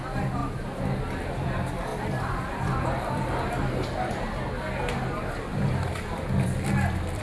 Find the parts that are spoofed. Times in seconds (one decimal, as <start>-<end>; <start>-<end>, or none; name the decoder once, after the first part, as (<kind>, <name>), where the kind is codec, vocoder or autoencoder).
5.5-7.2 (vocoder, BigVGAN v2)